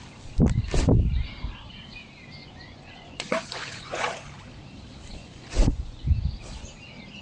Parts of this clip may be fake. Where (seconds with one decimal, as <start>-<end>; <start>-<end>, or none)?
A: 2.4-4.1; 5.2-6.1